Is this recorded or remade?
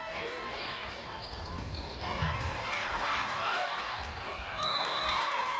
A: remade